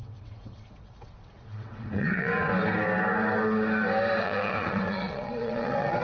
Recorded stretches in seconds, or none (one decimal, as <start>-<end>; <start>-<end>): 2.5-4.2